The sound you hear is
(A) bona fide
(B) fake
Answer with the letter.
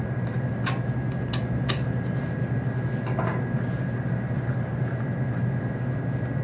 A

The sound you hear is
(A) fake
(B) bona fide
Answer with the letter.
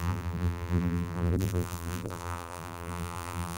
A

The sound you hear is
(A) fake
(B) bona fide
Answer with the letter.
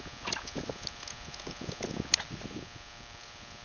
B